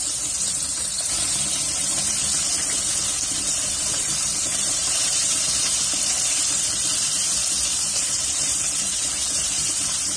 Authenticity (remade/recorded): remade